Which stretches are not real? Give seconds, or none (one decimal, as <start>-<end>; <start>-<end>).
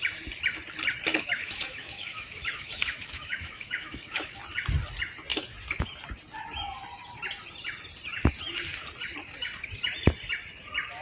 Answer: 1.1-4.4